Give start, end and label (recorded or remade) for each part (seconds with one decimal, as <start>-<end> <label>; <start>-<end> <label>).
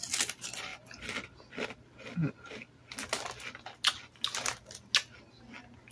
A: 0.0-5.9 recorded